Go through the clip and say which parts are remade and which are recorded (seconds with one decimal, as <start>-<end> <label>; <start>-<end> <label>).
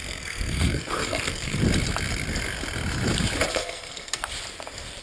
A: 0.0-1.6 remade; 1.6-3.5 recorded; 3.5-4.3 remade; 4.3-5.0 recorded